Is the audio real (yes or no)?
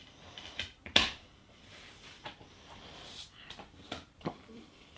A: no